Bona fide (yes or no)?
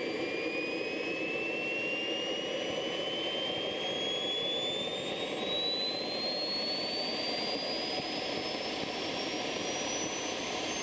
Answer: yes